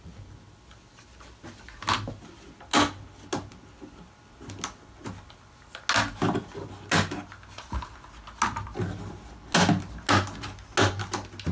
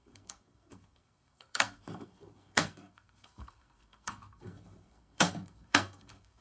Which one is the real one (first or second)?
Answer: first